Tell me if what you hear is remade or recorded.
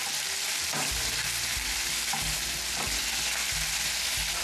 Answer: recorded